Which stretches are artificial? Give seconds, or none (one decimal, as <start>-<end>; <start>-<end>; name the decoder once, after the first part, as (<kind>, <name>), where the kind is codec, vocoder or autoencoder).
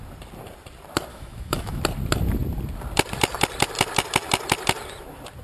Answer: 1.1-1.8 (autoencoder, DAC-VAE)